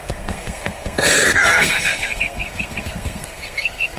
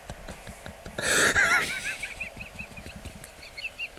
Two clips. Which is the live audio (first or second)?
second